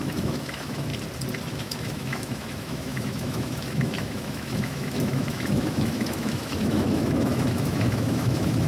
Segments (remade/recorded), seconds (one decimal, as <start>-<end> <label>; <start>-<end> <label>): 0.0-0.9 remade; 0.9-1.5 recorded; 1.5-8.7 remade